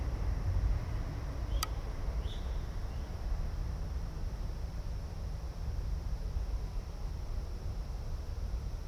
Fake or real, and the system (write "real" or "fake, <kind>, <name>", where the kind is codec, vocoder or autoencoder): fake, vocoder, BigVGAN v2